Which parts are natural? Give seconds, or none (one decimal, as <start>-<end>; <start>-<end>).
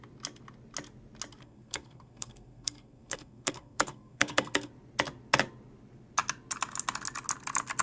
0.0-1.4; 4.7-7.8